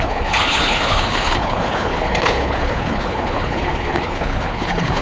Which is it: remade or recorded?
remade